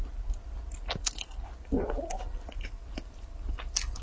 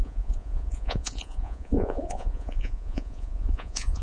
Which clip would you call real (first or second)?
first